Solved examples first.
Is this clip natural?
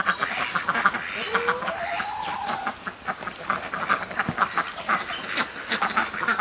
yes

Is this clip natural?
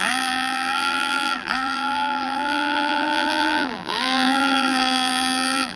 no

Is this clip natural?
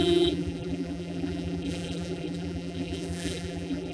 no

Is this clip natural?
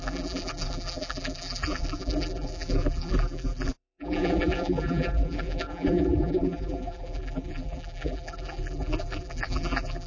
no